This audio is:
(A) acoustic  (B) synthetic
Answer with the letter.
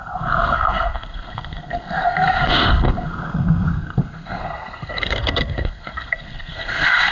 B